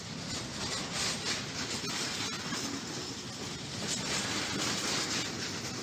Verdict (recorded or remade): recorded